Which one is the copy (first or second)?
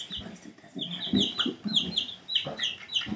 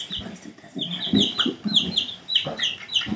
second